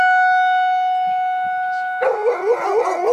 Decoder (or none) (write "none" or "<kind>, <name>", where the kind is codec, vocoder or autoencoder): none